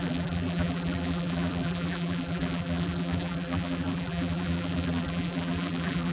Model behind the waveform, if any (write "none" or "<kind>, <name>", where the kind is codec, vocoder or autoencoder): vocoder, BigVGAN v2